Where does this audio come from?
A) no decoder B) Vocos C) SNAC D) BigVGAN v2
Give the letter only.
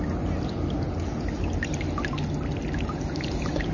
A